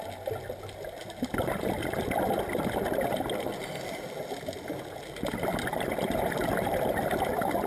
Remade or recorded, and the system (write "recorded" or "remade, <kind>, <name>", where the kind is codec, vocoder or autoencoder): recorded